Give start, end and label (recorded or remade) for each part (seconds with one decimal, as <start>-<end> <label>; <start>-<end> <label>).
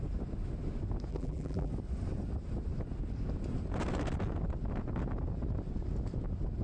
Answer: 0.0-1.1 recorded; 1.1-1.7 remade; 1.7-6.6 recorded